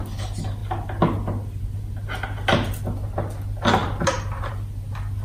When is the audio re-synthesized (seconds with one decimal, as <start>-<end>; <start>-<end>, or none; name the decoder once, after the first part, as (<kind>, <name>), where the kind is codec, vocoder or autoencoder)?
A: 3.8-4.5 (vocoder, BigVGAN v2)